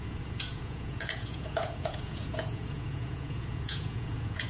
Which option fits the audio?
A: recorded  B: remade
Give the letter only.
B